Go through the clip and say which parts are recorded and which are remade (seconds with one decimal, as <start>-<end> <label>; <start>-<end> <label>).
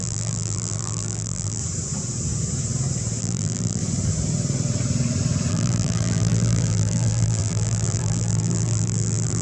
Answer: 0.0-1.6 remade; 1.6-3.2 recorded; 3.2-3.8 remade; 3.8-5.5 recorded; 5.5-9.4 remade